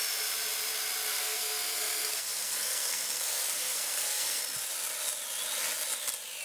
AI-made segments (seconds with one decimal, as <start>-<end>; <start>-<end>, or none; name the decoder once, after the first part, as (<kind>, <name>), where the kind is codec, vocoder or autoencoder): 1.1-4.4 (codec, SNAC)